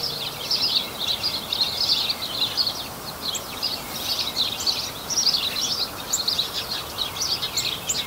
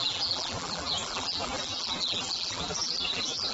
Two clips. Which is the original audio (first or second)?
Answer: first